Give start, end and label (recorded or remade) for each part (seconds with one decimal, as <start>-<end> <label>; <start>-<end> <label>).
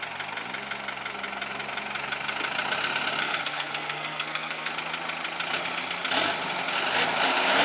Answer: 0.0-3.2 recorded; 3.2-4.7 remade; 4.7-7.6 recorded